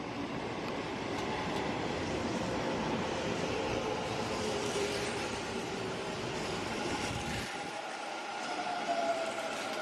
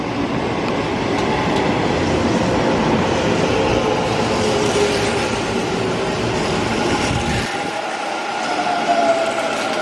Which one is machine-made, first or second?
first